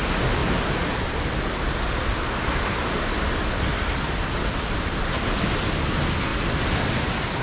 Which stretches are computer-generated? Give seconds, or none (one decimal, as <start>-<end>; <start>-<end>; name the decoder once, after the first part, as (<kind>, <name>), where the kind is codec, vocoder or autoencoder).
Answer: none